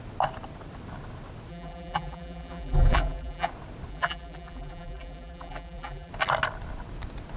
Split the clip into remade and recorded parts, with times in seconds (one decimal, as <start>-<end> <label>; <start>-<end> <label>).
0.0-1.5 recorded; 1.5-3.5 remade; 3.5-3.9 recorded; 3.9-6.1 remade; 6.1-7.4 recorded